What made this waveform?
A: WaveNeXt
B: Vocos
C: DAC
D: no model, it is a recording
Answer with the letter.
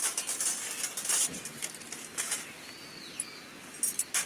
D